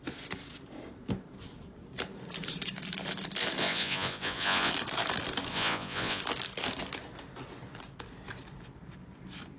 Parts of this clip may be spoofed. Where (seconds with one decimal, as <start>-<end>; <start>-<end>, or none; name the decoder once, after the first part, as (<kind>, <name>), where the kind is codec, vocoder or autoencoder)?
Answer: 3.6-4.7 (vocoder, Vocos); 5.5-6.2